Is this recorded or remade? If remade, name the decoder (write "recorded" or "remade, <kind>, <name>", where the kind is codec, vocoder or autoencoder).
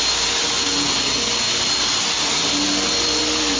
recorded